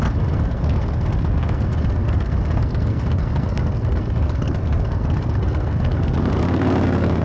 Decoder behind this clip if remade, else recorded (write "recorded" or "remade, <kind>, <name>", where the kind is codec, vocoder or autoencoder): remade, codec, SNAC